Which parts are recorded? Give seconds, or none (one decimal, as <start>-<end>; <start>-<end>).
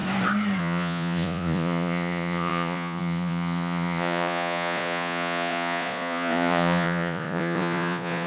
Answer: 0.0-0.6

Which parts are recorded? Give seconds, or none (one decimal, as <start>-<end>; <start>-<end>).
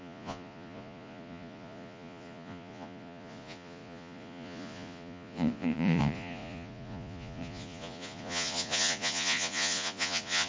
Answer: none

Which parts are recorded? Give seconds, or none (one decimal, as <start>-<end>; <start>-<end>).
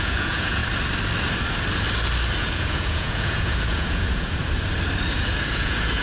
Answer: 0.6-2.4; 4.4-5.5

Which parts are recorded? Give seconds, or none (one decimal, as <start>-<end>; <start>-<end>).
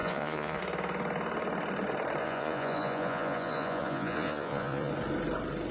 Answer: 0.6-2.2; 4.9-5.7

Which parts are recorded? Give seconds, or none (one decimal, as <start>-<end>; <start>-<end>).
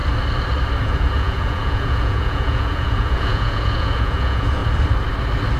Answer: 0.0-0.8; 4.6-5.6